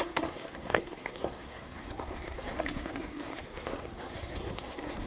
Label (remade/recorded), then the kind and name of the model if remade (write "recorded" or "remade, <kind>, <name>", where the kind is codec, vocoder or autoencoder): remade, codec, SNAC